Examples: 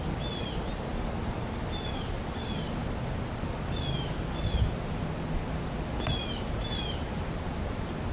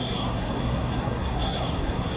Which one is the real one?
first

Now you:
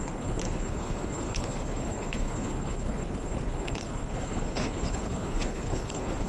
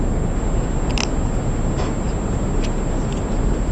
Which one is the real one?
second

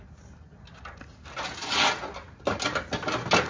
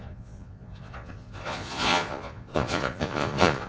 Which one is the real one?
first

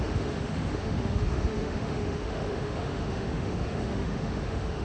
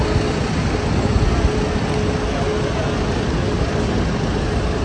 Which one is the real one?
second